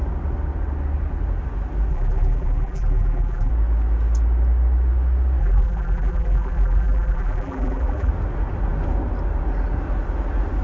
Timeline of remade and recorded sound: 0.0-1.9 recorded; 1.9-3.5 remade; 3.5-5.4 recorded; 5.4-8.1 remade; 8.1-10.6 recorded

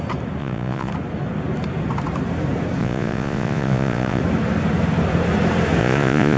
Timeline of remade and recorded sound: 0.0-0.4 recorded; 0.4-0.9 remade; 0.9-2.8 recorded; 2.8-4.2 remade; 4.2-5.8 recorded; 5.8-6.4 remade

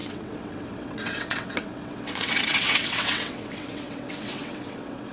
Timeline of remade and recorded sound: 0.0-5.1 remade

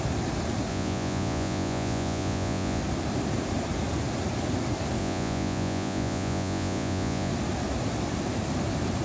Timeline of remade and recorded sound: 0.0-0.7 recorded; 0.7-2.8 remade; 2.8-5.0 recorded; 5.0-7.3 remade; 7.3-9.0 recorded

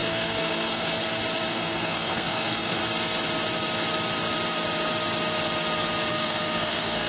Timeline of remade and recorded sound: 0.0-0.9 remade; 0.9-1.5 recorded; 1.5-2.8 remade; 2.8-6.1 recorded; 6.1-7.1 remade

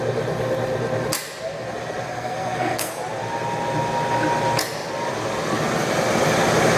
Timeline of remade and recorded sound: 0.0-2.1 recorded; 2.1-3.0 remade; 3.0-6.8 recorded

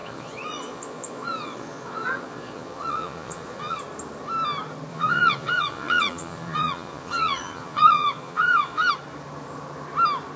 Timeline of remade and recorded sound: 0.0-3.8 remade; 3.8-4.9 recorded; 4.9-8.9 remade; 8.9-10.4 recorded